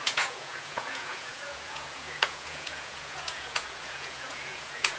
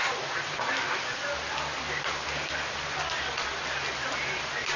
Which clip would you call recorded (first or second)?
second